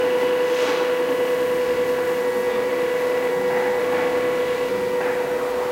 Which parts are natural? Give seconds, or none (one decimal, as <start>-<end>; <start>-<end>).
2.2-2.7; 3.3-3.8; 4.7-5.7